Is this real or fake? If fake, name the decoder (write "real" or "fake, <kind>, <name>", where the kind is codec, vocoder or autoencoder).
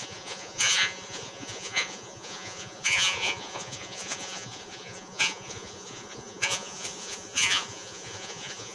fake, vocoder, Vocos